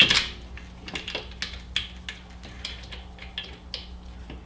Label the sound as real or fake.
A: real